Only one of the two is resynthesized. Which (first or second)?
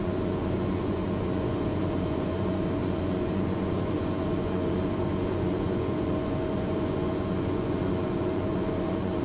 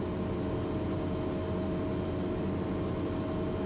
first